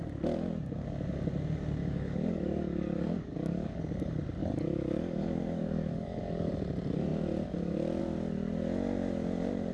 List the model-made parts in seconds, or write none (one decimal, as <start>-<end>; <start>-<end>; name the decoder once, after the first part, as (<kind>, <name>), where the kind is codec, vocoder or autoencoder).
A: 1.8-3.8 (codec, DAC); 4.4-6.5